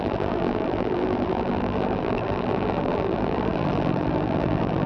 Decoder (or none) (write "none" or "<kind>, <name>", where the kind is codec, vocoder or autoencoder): vocoder, BigVGAN v2